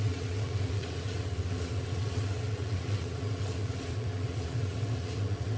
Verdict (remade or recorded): remade